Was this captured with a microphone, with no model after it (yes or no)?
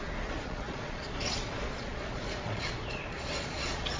no